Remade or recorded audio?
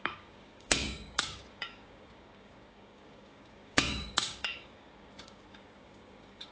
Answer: remade